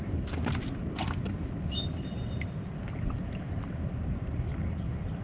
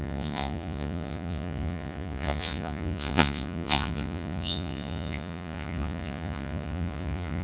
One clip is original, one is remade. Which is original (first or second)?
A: first